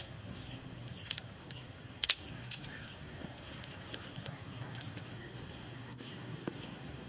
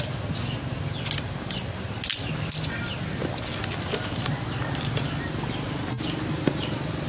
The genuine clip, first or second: second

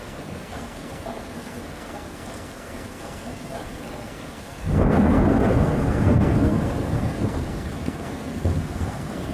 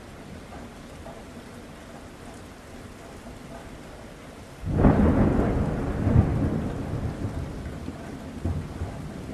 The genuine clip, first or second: second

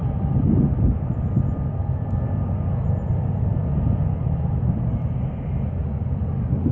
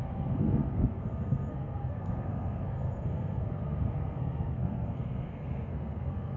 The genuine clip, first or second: first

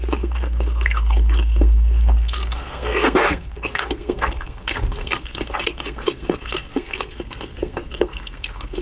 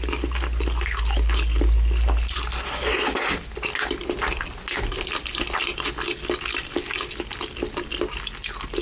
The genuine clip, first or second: second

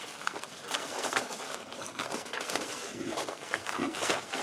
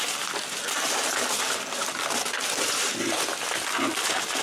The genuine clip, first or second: second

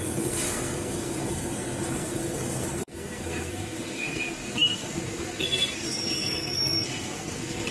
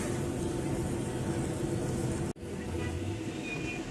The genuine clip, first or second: second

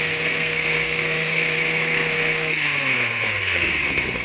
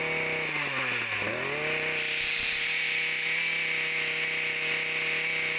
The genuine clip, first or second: second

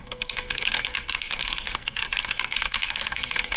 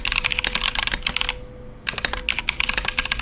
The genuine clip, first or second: second